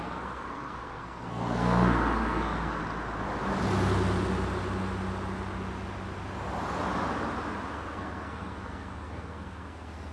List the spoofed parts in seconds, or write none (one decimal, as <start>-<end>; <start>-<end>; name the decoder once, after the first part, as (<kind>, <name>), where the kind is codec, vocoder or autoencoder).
0.0-2.8 (codec, SNAC); 7.7-10.1